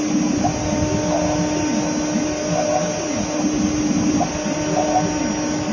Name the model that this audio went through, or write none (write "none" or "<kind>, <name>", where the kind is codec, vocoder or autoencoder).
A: none